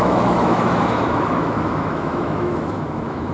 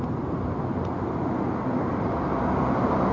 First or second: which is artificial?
first